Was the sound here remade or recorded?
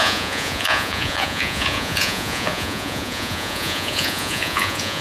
remade